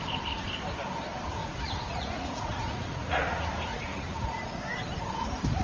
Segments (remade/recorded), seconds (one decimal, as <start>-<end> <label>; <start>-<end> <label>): 0.0-1.4 recorded; 1.4-3.5 remade; 3.5-3.9 recorded; 3.9-4.4 remade; 4.4-5.6 recorded